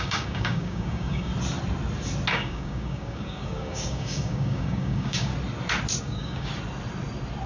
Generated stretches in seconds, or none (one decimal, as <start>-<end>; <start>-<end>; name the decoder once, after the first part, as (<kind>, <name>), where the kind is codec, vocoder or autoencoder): 0.0-1.3 (codec, DAC); 2.3-5.3; 6.0-6.5